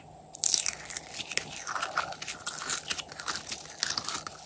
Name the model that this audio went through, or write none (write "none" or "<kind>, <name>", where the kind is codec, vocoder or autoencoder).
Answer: none